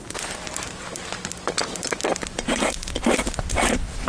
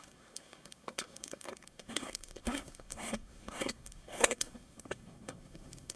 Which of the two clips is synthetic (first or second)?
second